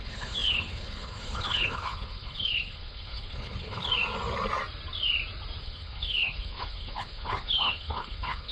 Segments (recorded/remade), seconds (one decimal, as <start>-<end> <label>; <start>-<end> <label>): 0.0-3.9 remade; 3.9-5.6 recorded; 5.6-8.5 remade